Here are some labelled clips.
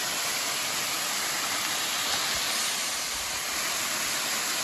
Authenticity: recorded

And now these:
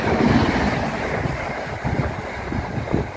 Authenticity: recorded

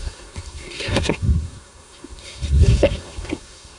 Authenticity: remade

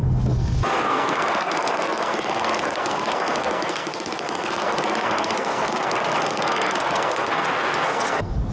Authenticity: remade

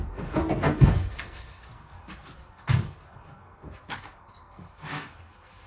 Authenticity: remade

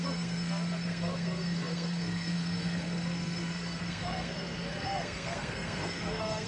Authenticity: remade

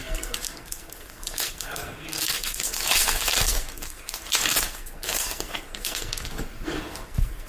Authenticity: remade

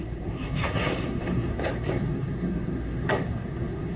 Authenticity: remade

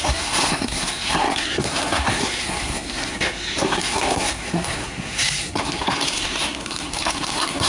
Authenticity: remade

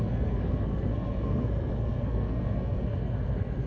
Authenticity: remade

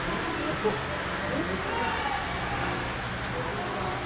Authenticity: recorded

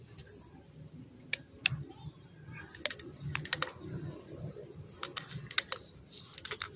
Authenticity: recorded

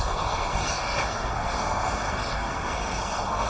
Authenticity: remade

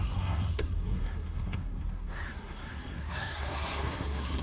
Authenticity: remade